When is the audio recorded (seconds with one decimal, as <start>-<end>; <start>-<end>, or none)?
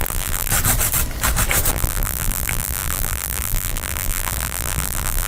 0.5-1.7